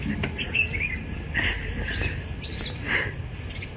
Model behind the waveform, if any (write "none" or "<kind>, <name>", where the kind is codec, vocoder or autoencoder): none